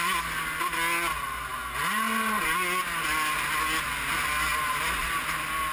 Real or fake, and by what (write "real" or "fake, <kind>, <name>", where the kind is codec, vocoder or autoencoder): real